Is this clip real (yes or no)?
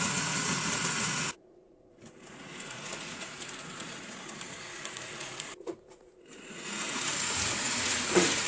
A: no